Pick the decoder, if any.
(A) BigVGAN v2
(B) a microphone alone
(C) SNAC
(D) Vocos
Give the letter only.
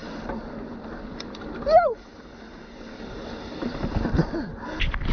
B